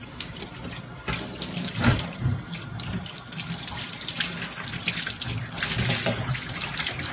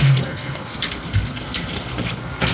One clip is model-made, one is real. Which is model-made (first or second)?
second